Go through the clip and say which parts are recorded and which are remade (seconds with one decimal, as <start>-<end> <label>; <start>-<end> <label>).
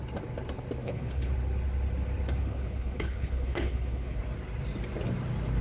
0.0-0.8 recorded; 0.8-1.3 remade; 1.3-2.4 recorded; 2.4-4.2 remade; 4.2-5.6 recorded